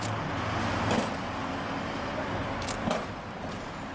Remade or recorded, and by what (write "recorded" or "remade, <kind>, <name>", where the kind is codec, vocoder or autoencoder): recorded